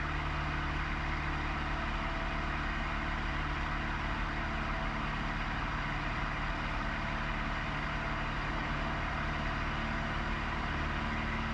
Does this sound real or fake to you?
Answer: real